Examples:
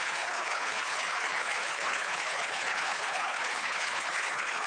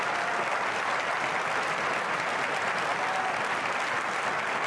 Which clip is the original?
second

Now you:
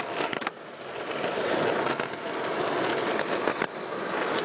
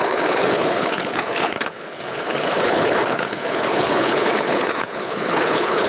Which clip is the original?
first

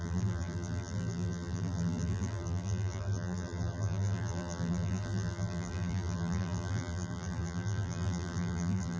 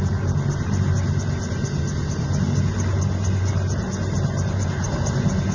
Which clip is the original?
second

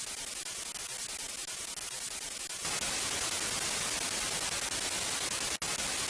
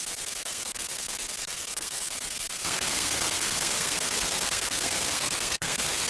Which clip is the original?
first